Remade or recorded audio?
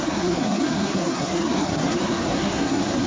remade